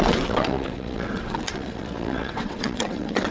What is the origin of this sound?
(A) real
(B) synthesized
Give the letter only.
B